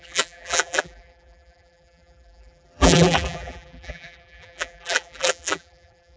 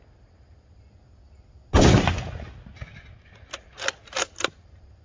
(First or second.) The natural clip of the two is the second